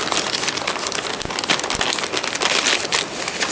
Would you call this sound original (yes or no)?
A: yes